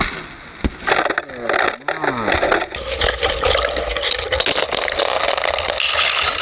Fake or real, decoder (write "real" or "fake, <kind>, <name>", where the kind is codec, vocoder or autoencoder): real